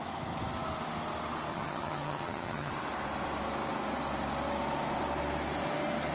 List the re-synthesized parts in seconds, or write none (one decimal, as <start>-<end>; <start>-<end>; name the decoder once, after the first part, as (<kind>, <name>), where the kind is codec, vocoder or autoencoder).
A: 1.5-2.7 (vocoder, HiFi-GAN)

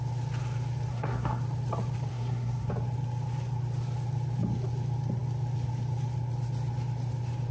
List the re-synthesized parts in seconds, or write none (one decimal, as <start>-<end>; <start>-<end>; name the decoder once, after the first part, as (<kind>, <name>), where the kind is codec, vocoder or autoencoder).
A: 0.9-1.4 (codec, SNAC); 2.1-2.7

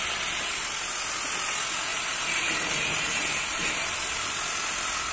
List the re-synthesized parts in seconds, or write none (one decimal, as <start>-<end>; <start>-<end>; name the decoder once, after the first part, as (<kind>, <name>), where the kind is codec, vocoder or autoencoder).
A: 1.9-3.2 (vocoder, BigVGAN v2); 3.6-4.3

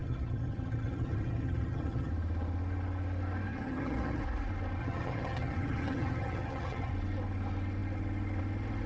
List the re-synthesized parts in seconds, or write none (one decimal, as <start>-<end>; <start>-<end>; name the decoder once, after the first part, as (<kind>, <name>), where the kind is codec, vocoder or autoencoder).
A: 0.0-2.1 (vocoder, HiFi-GAN); 3.5-4.2; 4.8-6.9

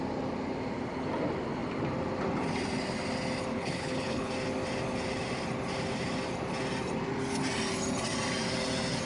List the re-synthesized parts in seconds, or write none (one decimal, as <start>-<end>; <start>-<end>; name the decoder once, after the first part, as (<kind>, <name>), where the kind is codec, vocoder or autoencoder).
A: 3.5-4.3 (codec, HILCodec)

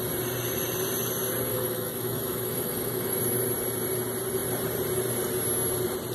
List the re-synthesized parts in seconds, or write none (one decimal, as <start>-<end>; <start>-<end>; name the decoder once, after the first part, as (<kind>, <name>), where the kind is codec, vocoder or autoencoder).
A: 1.5-3.2 (autoencoder, DAC-VAE)

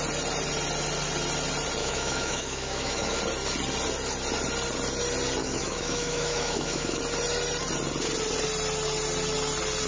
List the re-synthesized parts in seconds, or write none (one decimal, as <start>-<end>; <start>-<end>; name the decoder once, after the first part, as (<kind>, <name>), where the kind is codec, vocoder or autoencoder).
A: 1.8-3.2 (autoencoder, DAC-VAE); 5.4-7.0